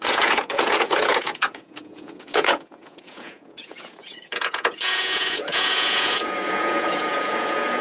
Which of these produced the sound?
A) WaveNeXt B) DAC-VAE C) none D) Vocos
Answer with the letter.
D